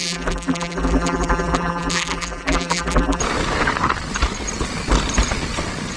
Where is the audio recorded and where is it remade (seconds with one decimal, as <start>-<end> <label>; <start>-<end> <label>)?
0.0-3.2 remade; 3.2-6.0 recorded